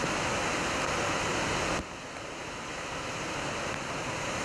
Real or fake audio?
real